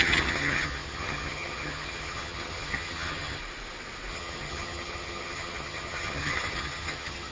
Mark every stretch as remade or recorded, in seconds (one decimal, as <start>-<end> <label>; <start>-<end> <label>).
0.0-3.4 remade; 3.4-4.1 recorded; 4.1-7.3 remade